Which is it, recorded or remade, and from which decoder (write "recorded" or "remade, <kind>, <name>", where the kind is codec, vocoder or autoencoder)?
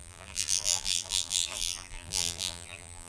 remade, vocoder, BigVGAN v2